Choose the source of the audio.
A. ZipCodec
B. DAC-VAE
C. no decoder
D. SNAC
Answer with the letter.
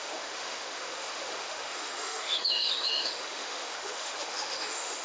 B